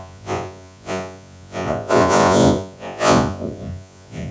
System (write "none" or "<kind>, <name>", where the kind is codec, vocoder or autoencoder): vocoder, Vocos